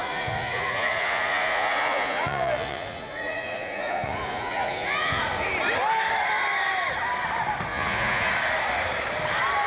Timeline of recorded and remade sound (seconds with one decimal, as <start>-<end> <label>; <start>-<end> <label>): 0.0-5.2 remade; 5.2-7.7 recorded; 7.7-8.3 remade; 8.3-9.7 recorded